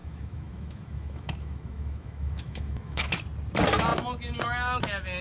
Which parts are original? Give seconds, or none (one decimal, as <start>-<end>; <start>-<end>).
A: 3.1-5.2